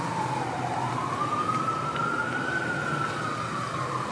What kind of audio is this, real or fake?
real